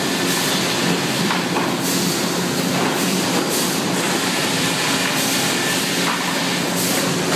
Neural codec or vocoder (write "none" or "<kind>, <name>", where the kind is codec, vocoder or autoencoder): none